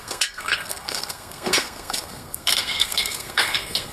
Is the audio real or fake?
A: fake